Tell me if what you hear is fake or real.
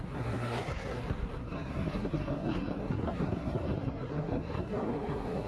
fake